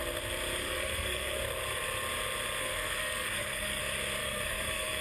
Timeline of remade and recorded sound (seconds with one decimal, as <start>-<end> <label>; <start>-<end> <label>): 0.0-0.6 recorded; 0.6-1.4 remade; 1.4-2.6 recorded; 2.6-3.8 remade; 3.8-4.2 recorded; 4.2-5.0 remade